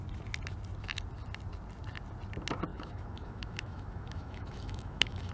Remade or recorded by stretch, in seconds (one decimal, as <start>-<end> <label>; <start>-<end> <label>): 0.0-2.7 recorded; 2.7-5.3 remade